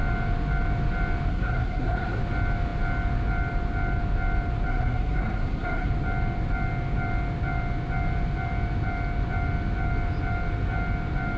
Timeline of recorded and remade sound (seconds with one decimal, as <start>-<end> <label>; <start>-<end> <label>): 0.0-1.3 recorded; 1.3-2.2 remade; 2.2-4.7 recorded; 4.7-5.9 remade; 5.9-11.4 recorded